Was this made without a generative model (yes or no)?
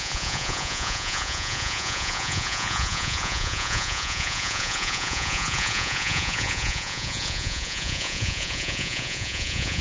no